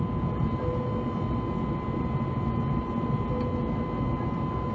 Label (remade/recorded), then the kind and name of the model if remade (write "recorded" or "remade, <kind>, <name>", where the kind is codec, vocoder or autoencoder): recorded